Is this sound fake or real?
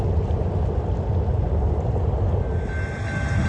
real